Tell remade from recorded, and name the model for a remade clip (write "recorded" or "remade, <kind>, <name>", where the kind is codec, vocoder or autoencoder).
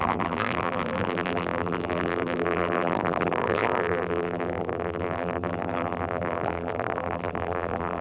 remade, vocoder, BigVGAN v2